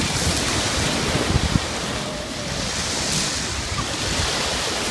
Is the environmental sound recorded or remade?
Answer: recorded